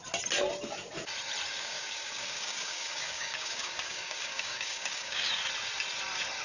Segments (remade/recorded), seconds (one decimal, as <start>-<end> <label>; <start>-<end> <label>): 0.0-1.5 recorded; 1.5-5.3 remade; 5.3-6.4 recorded